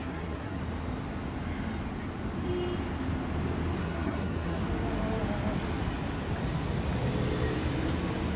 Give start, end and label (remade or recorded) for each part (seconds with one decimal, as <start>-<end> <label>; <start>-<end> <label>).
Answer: 0.0-0.6 remade; 0.6-3.8 recorded; 3.8-4.6 remade; 4.6-8.4 recorded